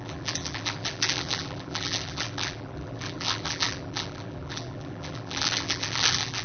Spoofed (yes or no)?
yes